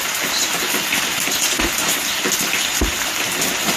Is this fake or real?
real